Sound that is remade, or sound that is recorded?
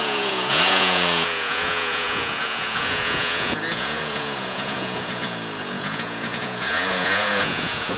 remade